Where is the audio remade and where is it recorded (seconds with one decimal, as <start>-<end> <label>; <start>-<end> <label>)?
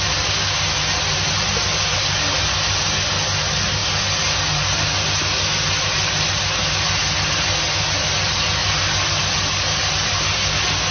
0.0-10.9 recorded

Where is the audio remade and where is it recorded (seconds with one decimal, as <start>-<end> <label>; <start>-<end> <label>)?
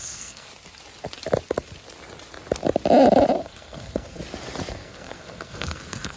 0.0-0.5 remade; 0.5-3.4 recorded; 3.4-4.2 remade; 4.2-4.7 recorded; 4.7-6.2 remade